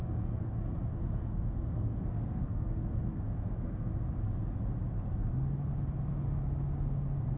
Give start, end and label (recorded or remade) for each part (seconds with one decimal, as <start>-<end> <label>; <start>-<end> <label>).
0.0-0.9 recorded; 0.9-3.9 remade; 3.9-7.4 recorded